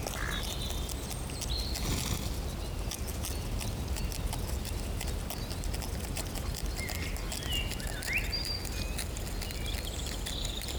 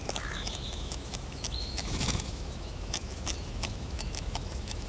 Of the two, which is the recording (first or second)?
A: first